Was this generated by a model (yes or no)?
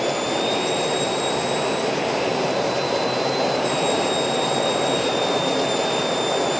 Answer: yes